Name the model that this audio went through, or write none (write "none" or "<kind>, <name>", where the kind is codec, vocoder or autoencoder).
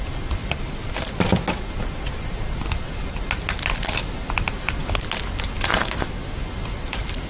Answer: none